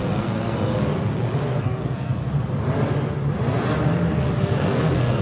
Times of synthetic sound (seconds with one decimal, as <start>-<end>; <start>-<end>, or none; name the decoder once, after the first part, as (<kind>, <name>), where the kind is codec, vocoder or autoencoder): 0.0-0.7 (codec, SNAC); 1.6-2.2; 4.4-5.2